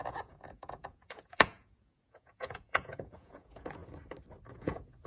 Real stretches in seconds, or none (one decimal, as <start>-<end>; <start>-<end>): 3.8-4.5